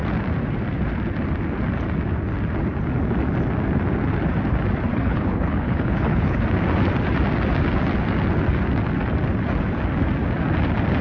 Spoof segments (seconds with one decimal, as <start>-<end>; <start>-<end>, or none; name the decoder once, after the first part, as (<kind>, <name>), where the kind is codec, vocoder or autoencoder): 4.9-6.4 (codec, HILCodec)